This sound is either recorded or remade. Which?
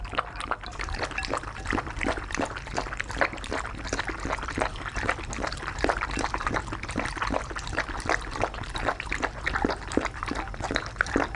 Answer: recorded